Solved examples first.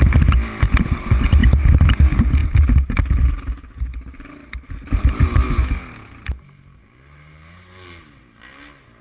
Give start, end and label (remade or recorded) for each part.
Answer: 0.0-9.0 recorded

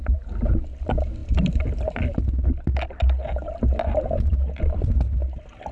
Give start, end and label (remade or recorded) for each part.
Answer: 0.0-5.7 recorded

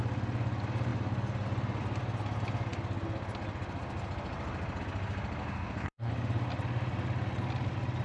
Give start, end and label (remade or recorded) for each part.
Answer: 0.0-5.4 recorded; 5.4-6.1 remade; 6.1-8.0 recorded

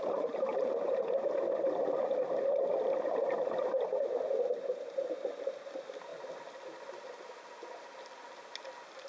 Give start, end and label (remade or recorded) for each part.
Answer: 0.0-9.1 recorded